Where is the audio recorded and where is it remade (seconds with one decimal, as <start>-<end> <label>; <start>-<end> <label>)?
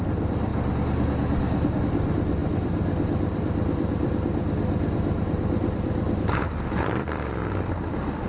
0.0-0.5 remade; 0.5-1.8 recorded; 1.8-8.3 remade